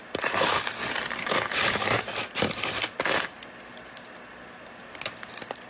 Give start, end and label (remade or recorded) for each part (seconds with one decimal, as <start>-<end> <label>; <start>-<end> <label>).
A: 0.0-5.7 recorded